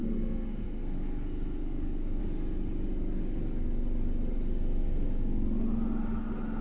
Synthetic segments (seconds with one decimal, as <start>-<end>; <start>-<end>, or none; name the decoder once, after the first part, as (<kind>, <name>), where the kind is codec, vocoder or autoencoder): 0.0-2.2 (codec, SNAC)

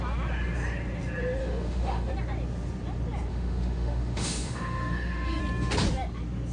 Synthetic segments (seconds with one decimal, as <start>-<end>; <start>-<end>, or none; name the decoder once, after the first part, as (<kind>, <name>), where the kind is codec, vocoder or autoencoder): 1.4-2.1 (autoencoder, DAC-VAE); 3.3-5.4